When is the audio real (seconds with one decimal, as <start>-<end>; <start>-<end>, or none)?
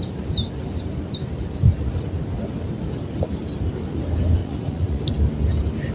0.0-4.4; 5.0-5.9